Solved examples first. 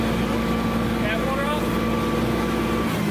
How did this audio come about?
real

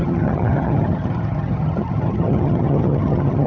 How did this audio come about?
fake